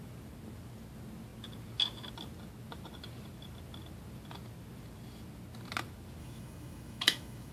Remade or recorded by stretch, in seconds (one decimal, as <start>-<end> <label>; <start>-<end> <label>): 0.0-6.2 recorded; 6.2-7.5 remade